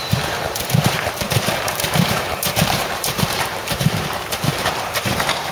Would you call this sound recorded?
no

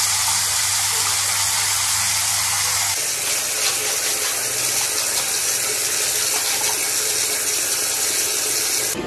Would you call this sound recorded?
yes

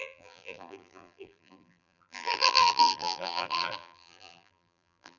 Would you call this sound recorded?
no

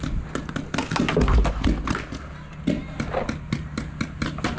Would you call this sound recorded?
yes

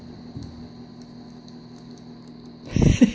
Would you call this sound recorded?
yes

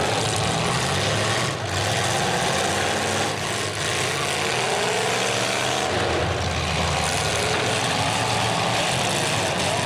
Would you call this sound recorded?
yes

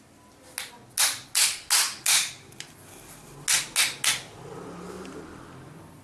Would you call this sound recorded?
yes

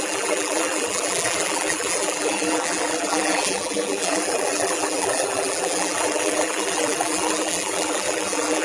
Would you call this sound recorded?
no